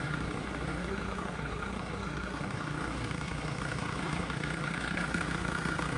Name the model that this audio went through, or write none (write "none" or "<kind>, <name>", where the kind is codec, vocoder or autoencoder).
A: codec, SNAC